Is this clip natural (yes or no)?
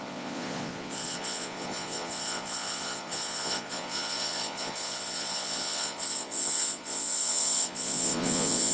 no